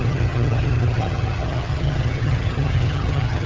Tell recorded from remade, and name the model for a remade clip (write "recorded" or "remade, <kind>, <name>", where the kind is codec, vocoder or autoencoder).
remade, vocoder, HiFi-GAN